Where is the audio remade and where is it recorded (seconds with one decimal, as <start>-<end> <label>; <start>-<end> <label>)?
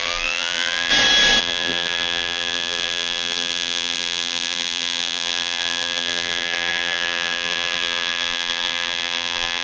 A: 0.0-0.9 remade; 0.9-1.4 recorded; 1.4-9.6 remade